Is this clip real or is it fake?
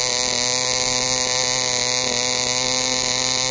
real